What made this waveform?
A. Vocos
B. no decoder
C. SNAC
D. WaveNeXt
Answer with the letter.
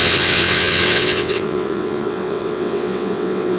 D